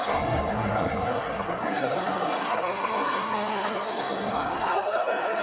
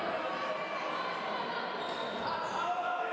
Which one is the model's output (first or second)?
first